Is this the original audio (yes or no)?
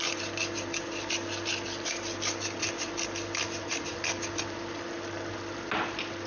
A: yes